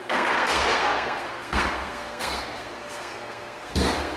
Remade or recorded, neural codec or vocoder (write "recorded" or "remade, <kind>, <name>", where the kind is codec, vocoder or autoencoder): remade, codec, SNAC